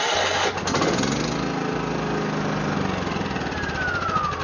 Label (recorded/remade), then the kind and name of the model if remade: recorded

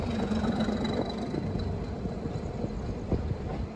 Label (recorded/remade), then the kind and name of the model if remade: recorded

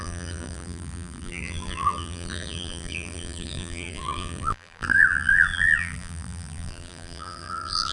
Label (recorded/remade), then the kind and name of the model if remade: remade, vocoder, BigVGAN v2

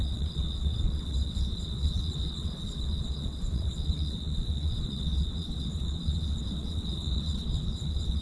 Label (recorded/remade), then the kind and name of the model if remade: remade, vocoder, WaveNeXt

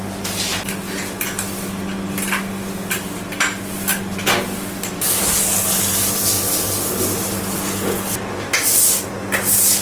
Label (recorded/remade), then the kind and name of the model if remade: recorded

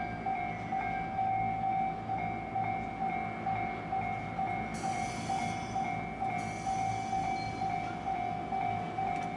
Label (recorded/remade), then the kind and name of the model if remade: recorded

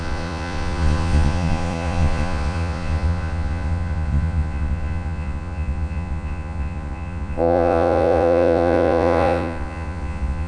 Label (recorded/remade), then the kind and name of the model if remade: remade, vocoder, Vocos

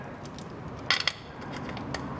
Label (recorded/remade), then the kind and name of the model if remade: recorded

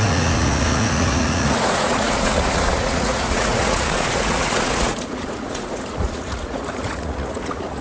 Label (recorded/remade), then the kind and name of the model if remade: remade, vocoder, Vocos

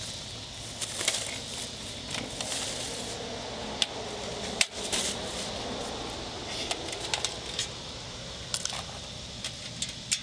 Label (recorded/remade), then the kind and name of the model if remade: recorded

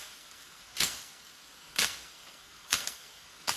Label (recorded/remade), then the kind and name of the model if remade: remade, codec, SNAC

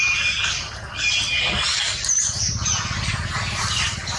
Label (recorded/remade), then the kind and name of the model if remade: recorded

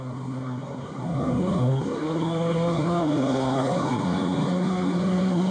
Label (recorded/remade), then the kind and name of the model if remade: remade, codec, SNAC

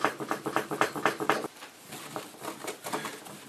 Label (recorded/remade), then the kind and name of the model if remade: recorded